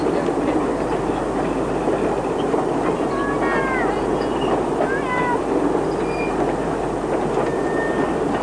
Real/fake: real